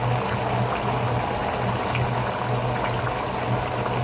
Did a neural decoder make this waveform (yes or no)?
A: no